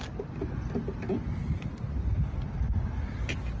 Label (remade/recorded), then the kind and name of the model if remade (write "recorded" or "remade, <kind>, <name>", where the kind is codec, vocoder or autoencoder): recorded